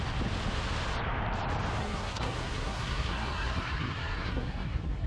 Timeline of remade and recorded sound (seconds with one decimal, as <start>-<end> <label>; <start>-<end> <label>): 0.0-1.8 recorded; 1.8-5.1 remade